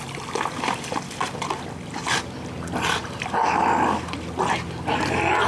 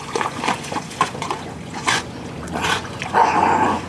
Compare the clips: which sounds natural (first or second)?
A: first